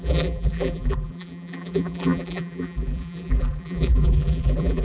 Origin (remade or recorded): remade